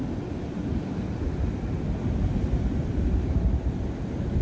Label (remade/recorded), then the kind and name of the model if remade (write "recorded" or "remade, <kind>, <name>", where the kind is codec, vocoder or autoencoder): recorded